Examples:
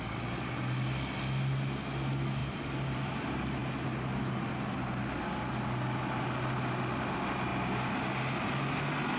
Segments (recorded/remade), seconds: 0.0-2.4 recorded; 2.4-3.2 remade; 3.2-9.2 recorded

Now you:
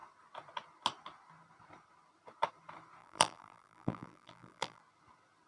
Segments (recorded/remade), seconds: 0.0-3.0 recorded; 3.0-4.8 remade; 4.8-5.5 recorded

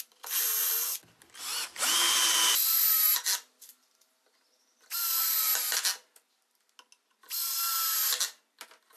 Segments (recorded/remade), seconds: 0.0-9.0 recorded

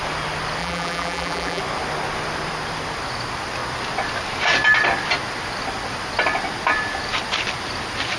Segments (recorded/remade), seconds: 0.0-0.6 recorded; 0.6-1.6 remade; 1.6-8.2 recorded